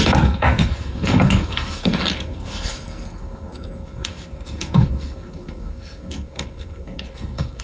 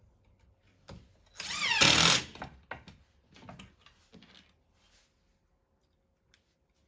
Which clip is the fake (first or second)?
first